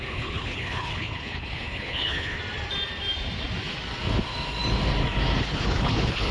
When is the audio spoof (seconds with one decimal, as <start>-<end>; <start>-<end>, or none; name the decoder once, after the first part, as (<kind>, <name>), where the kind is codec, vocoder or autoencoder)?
0.0-2.4 (codec, HILCodec); 5.4-6.3